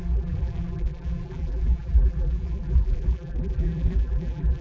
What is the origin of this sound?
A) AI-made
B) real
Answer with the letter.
A